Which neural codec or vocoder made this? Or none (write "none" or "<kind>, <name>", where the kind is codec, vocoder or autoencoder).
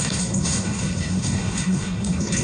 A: codec, SNAC